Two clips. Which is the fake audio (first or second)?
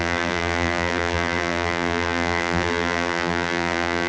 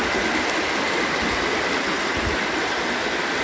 first